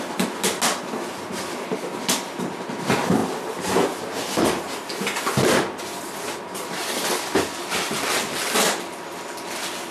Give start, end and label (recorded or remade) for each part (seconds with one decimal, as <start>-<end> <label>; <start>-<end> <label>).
0.0-9.9 recorded